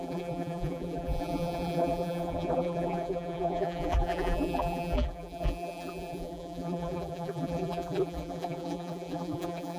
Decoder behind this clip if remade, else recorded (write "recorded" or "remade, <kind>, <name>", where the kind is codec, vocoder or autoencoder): remade, vocoder, BigVGAN v2